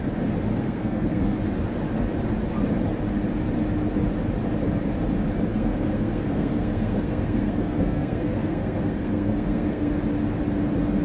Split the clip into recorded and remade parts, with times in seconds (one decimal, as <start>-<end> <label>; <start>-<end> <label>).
0.0-0.5 recorded; 0.5-1.4 remade; 1.4-5.5 recorded; 5.5-9.9 remade; 9.9-11.0 recorded